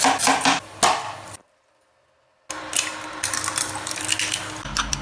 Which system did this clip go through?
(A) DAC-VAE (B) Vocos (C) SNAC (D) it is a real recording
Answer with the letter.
D